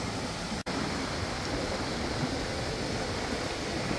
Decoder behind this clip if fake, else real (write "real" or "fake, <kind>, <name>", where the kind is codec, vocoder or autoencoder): real